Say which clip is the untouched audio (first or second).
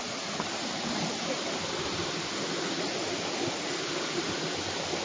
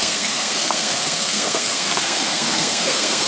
first